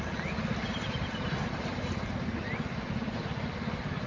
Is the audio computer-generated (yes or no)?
no